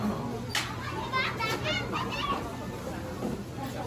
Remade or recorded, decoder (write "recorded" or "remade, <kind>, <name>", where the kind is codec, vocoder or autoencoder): recorded